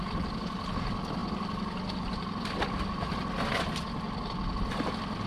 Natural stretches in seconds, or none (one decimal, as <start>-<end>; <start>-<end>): 0.0-5.3